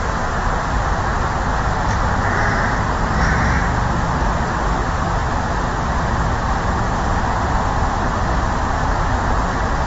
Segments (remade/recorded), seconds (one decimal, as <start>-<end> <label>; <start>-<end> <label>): 0.0-1.5 recorded; 1.5-3.2 remade; 3.2-9.9 recorded